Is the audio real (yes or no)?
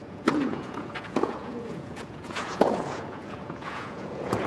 no